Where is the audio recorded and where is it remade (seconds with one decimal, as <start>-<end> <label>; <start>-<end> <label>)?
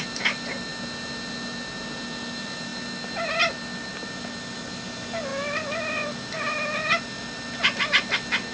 0.0-8.5 recorded